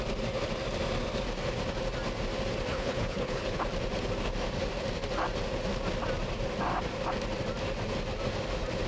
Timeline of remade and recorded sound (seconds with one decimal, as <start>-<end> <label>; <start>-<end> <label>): 0.0-2.7 recorded; 2.7-3.6 remade; 3.6-8.9 recorded